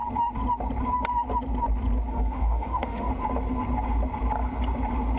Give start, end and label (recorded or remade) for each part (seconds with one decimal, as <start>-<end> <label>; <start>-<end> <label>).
0.0-2.1 recorded; 2.1-3.1 remade; 3.1-5.2 recorded